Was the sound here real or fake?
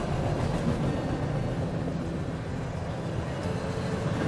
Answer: real